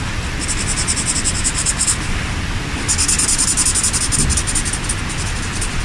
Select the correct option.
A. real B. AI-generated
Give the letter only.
A